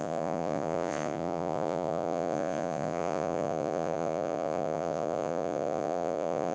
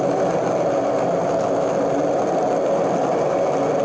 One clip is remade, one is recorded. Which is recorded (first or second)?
second